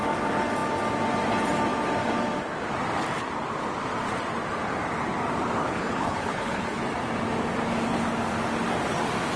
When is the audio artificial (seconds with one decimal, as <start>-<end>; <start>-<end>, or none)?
5.6-6.8